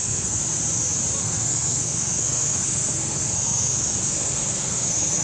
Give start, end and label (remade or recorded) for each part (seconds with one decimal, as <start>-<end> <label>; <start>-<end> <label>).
0.0-0.4 remade; 0.4-1.2 recorded; 1.2-5.2 remade